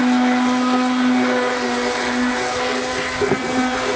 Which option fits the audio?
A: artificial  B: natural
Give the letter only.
B